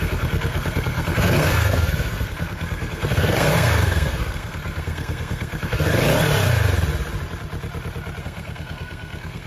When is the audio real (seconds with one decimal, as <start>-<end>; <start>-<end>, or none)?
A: 5.9-8.2